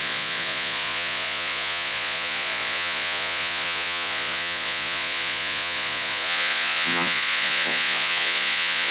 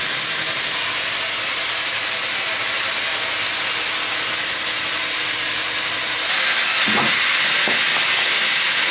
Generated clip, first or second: first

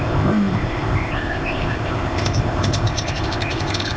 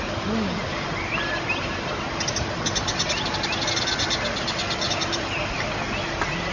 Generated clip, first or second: first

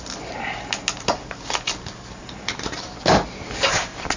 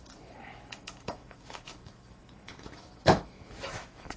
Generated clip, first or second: second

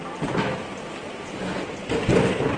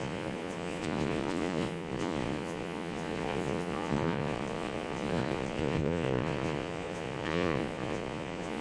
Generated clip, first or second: second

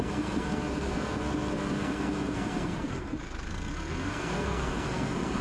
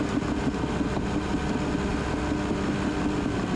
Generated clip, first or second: first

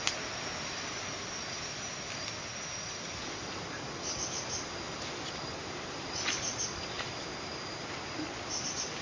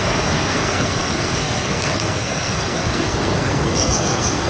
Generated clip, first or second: second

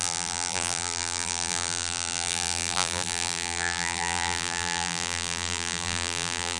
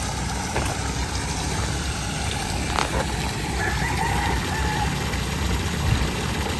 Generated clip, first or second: first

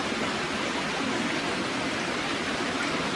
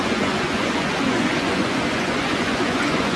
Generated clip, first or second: second